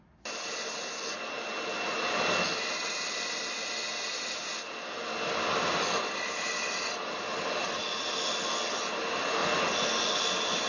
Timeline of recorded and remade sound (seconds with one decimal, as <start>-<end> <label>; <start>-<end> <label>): 0.0-10.7 recorded